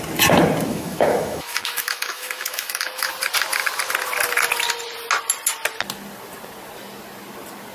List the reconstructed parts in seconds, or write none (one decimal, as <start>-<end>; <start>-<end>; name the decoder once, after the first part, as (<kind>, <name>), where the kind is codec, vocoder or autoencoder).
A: 0.7-3.1 (autoencoder, DAC-VAE)

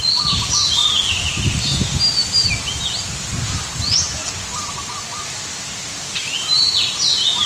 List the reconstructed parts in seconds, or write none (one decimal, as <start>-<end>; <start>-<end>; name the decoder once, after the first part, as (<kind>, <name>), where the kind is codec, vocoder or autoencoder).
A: 5.5-6.4 (vocoder, BigVGAN v2)

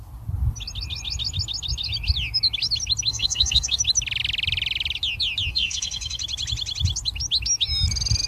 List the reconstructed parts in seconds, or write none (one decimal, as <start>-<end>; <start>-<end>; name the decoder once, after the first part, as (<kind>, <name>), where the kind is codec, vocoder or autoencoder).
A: 3.1-3.8 (codec, SNAC); 5.5-6.2